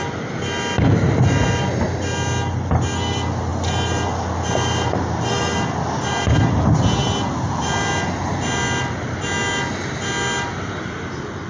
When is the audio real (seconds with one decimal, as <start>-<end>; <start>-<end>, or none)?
0.0-11.5